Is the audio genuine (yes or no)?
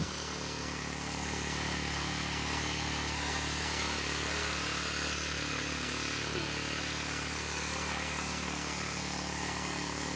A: no